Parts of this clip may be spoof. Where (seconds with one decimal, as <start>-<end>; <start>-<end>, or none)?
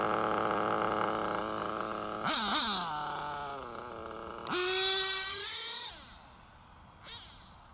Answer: 5.3-5.9